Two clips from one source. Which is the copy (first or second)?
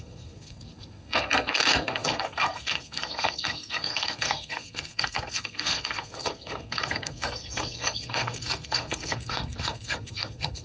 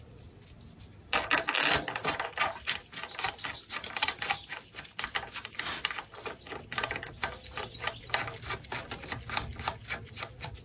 first